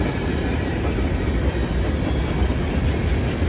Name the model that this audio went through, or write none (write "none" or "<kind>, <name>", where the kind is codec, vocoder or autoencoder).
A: none